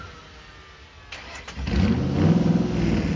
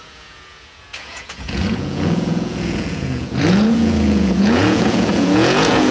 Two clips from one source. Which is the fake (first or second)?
second